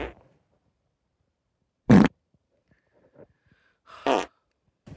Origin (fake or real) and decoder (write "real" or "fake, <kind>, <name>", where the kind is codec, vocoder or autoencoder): fake, vocoder, BigVGAN v2